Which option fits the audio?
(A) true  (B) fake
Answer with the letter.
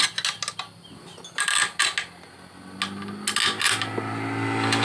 A